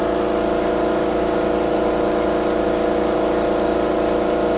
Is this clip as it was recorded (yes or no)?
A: yes